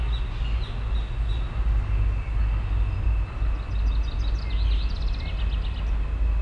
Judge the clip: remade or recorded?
recorded